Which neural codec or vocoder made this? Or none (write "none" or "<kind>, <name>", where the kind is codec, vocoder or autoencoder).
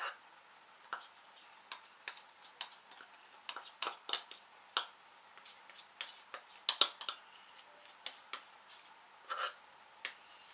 none